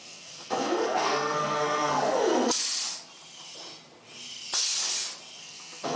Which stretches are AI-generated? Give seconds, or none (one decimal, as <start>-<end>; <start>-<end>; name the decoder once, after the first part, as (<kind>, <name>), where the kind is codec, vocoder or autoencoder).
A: 0.0-2.6 (codec, SNAC); 5.4-6.0